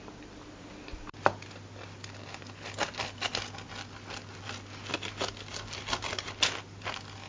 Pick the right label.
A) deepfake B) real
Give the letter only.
B